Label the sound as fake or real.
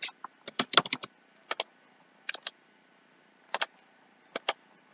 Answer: real